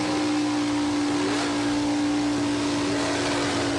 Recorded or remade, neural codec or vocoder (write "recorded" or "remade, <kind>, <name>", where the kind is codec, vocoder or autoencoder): recorded